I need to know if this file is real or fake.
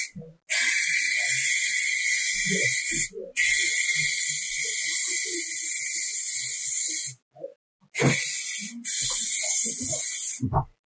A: real